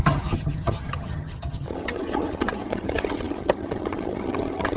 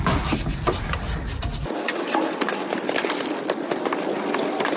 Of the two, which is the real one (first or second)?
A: second